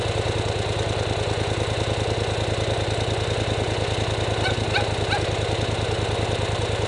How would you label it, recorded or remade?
recorded